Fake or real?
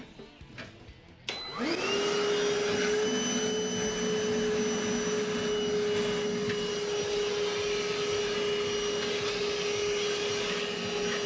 real